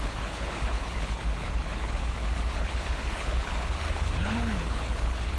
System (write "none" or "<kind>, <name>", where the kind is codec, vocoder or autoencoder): codec, HILCodec